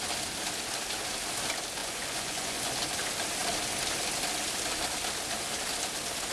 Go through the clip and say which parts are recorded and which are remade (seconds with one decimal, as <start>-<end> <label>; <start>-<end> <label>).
0.0-1.8 recorded; 1.8-2.7 remade; 2.7-6.3 recorded